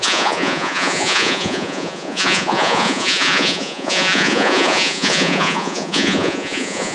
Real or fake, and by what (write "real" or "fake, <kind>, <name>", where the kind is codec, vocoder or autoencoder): fake, vocoder, Vocos